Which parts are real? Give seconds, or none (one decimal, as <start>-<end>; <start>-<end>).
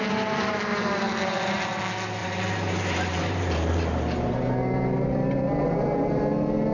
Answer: 0.0-0.7; 1.8-2.2; 6.2-6.7